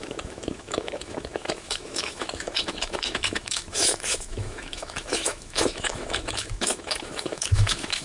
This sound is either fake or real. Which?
fake